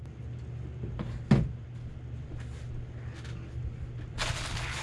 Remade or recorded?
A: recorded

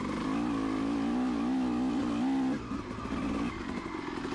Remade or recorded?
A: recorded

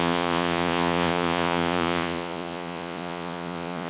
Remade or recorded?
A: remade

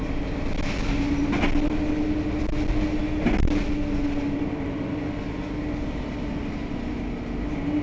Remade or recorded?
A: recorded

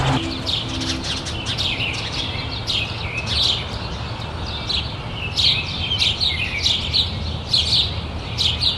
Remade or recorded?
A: recorded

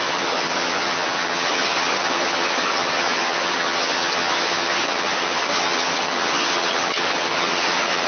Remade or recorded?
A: remade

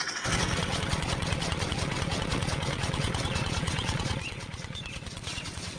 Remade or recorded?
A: remade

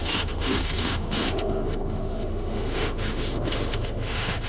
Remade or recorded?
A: remade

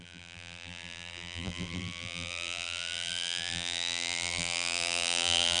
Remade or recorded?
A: remade